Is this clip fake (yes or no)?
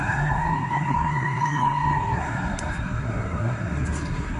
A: yes